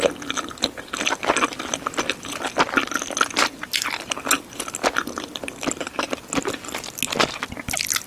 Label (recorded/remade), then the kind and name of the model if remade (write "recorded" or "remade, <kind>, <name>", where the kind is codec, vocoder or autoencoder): recorded